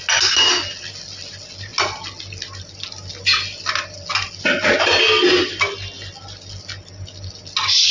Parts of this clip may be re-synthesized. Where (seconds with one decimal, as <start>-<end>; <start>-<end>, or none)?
none